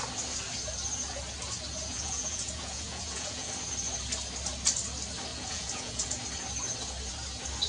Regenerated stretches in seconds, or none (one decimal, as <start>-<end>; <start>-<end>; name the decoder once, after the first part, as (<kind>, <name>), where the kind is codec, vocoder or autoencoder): 1.9-3.5 (vocoder, Vocos); 5.3-6.2